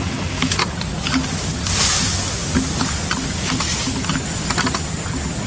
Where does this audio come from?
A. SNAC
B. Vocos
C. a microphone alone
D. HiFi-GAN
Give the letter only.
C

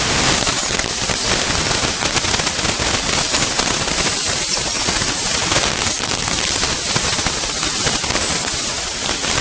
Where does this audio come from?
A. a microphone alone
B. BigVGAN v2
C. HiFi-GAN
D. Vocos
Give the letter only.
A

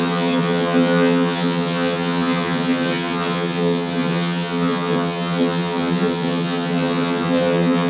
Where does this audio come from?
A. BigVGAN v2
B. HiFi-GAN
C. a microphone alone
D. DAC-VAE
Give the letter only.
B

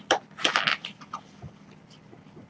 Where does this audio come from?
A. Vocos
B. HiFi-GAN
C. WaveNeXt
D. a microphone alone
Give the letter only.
D